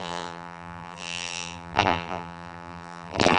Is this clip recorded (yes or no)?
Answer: no